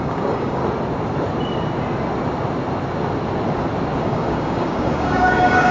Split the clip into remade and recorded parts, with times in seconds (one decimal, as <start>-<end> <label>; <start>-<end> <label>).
0.0-0.6 remade; 0.6-4.0 recorded; 4.0-5.7 remade